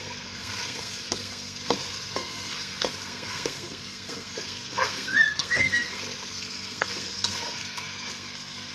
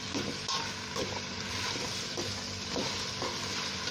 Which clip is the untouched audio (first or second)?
second